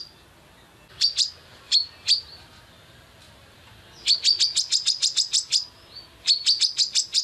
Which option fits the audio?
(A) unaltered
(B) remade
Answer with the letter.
A